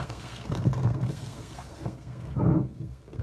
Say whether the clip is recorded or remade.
remade